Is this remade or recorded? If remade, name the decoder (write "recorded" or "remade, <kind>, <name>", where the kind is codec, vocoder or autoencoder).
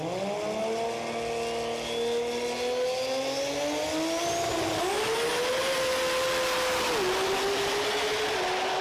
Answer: recorded